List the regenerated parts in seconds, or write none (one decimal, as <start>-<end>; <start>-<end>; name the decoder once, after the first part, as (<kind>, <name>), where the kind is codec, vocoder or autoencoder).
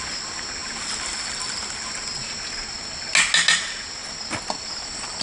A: none